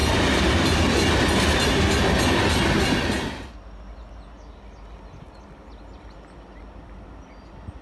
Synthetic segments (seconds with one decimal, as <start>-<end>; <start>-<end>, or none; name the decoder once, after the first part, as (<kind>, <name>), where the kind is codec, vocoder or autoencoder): none